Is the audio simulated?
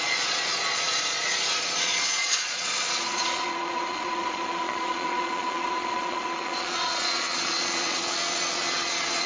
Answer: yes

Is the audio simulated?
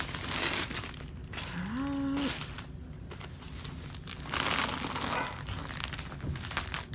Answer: no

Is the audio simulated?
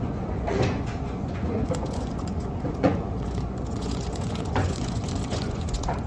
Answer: yes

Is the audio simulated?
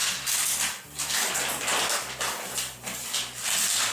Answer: no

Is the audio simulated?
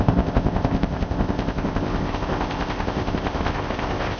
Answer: yes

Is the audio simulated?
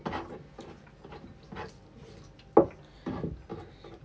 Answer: no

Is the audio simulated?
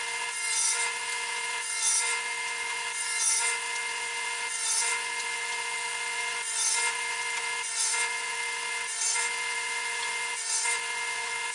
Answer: yes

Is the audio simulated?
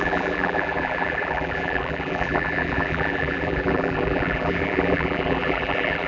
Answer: yes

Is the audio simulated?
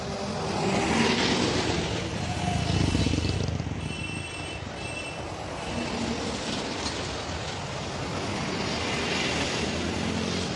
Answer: no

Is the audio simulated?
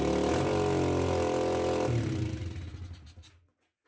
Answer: no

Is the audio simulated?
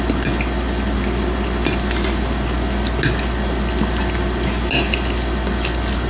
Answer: no